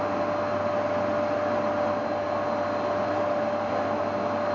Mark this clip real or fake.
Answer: real